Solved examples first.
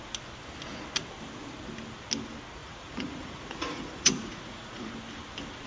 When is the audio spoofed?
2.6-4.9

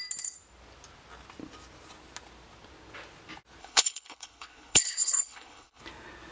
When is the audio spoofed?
3.6-5.8

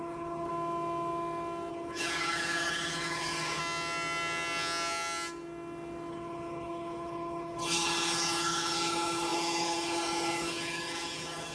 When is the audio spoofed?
0.0-0.5; 1.7-3.6; 6.1-11.5

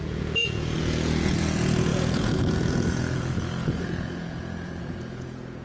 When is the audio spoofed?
0.0-5.6